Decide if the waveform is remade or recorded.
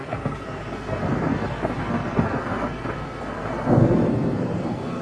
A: remade